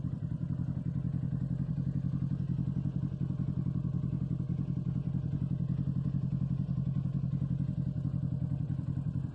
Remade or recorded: recorded